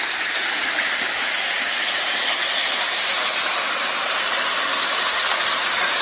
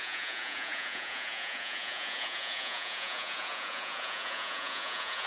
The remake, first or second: second